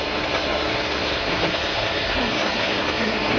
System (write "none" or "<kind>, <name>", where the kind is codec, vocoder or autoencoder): codec, SNAC